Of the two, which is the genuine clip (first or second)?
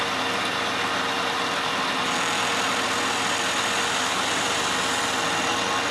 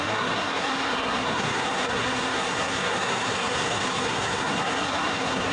first